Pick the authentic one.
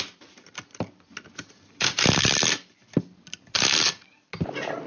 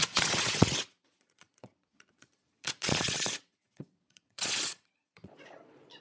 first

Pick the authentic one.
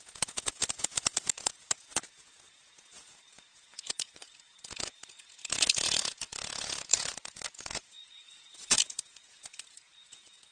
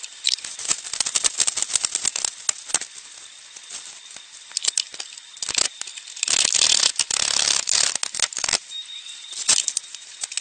second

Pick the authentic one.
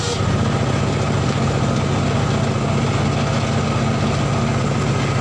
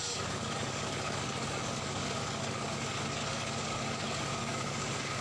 first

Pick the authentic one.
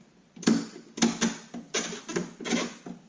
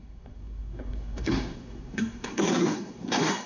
first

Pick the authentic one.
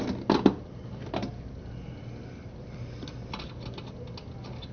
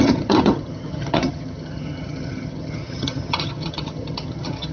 first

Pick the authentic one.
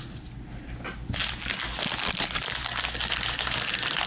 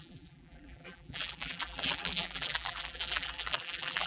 first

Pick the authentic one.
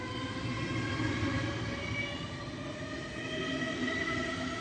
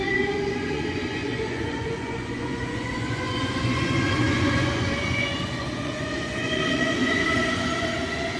first